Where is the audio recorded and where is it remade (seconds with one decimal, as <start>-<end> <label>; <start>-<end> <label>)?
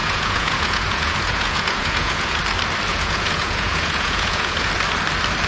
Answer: 0.0-2.4 remade; 2.4-2.9 recorded; 2.9-4.7 remade; 4.7-5.5 recorded